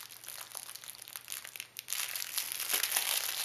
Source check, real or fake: real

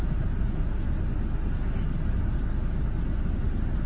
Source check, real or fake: real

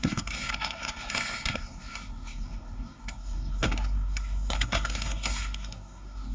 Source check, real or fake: fake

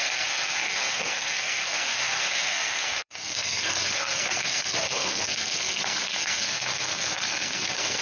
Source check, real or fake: fake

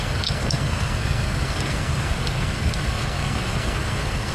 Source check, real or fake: fake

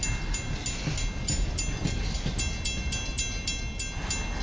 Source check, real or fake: real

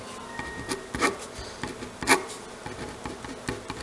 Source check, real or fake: real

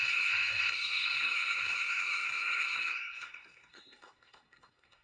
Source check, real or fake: fake